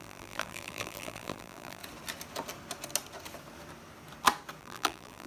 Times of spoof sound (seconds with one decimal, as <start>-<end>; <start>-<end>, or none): 0.0-1.8; 4.6-5.3